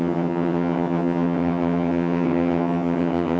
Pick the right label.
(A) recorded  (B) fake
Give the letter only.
B